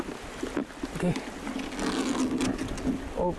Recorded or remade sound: recorded